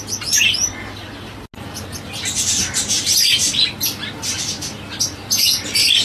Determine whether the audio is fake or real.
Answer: real